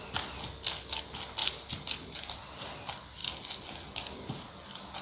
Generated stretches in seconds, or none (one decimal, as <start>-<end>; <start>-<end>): none